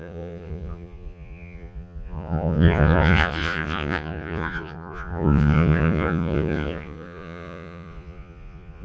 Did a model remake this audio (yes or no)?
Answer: yes